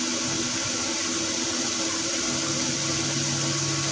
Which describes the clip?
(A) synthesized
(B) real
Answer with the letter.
B